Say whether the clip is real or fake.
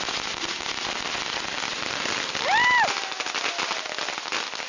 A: real